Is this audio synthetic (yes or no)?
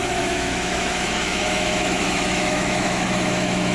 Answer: yes